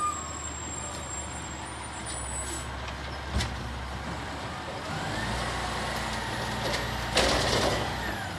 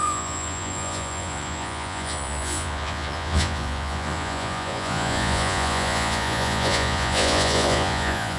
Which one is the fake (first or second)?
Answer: second